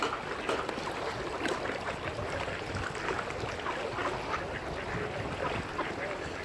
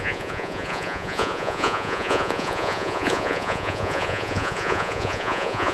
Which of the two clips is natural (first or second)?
first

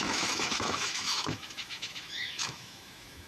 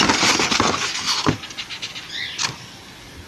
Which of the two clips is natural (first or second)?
second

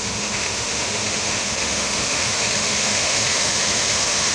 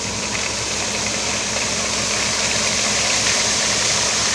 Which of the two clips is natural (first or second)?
second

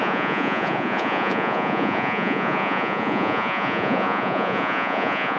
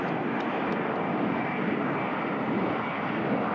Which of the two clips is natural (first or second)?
second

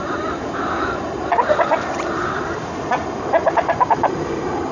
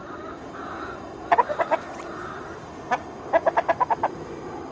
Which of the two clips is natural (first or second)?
second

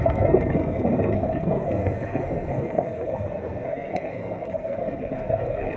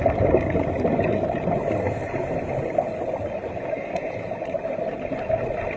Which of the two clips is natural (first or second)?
second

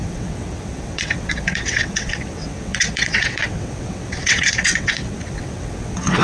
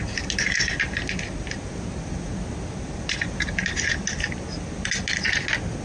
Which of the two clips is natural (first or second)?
second